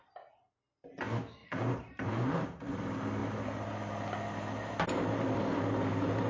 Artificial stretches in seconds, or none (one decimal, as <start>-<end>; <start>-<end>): 1.4-2.6